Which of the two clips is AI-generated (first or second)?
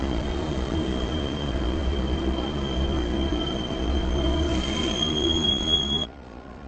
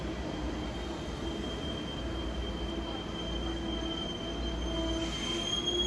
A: first